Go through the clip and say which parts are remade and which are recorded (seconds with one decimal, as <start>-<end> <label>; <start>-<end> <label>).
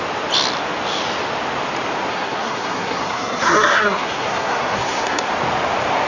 0.0-2.1 recorded; 2.1-5.3 remade; 5.3-6.1 recorded